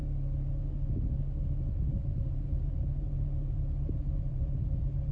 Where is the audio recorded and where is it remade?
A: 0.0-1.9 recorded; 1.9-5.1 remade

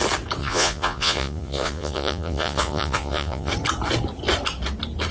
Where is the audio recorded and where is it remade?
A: 0.0-0.4 recorded; 0.4-3.5 remade; 3.5-5.1 recorded

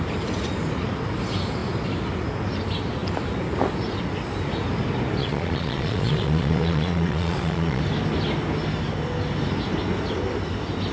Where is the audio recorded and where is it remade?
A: 0.0-5.2 recorded; 5.2-7.8 remade; 7.8-10.9 recorded

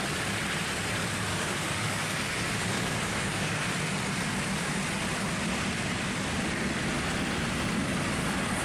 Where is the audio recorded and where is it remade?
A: 0.0-1.3 recorded; 1.3-3.7 remade; 3.7-8.6 recorded

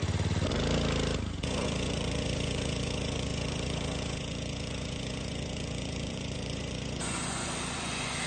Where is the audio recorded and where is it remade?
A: 0.0-1.3 recorded; 1.3-8.3 remade

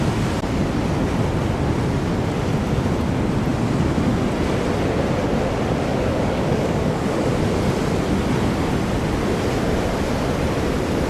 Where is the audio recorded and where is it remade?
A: 0.0-5.9 recorded; 5.9-7.3 remade; 7.3-11.1 recorded

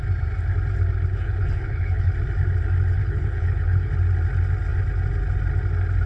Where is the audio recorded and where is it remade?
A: 0.0-1.1 recorded; 1.1-2.1 remade; 2.1-3.0 recorded; 3.0-3.9 remade; 3.9-6.1 recorded